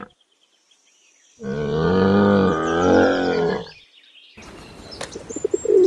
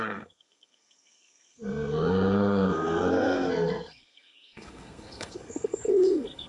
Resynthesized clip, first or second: second